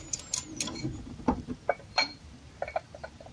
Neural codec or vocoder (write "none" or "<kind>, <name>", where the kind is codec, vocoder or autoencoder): vocoder, BigVGAN v2